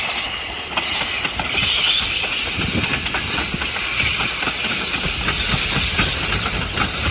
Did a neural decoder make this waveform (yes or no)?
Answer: no